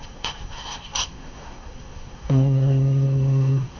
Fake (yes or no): yes